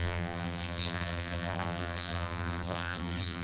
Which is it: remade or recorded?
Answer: remade